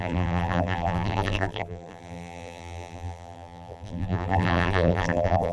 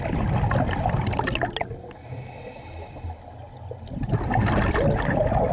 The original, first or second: second